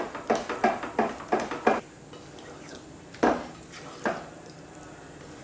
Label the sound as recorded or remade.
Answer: recorded